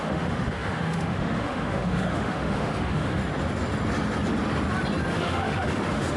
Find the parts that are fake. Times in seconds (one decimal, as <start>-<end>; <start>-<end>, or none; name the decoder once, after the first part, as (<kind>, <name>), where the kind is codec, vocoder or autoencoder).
0.0-3.2 (autoencoder, DAC-VAE); 5.1-6.2